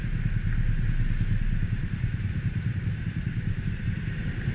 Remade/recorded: recorded